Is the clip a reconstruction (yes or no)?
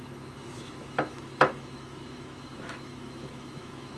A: yes